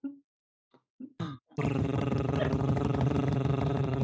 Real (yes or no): no